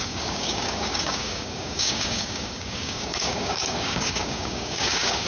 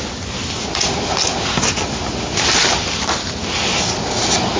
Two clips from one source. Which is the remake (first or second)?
first